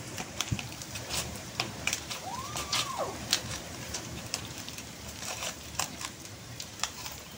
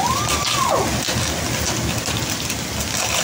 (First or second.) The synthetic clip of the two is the first